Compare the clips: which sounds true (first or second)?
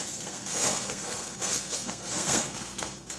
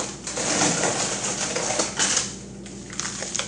second